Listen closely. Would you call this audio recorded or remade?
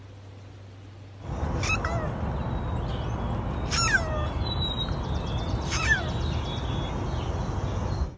recorded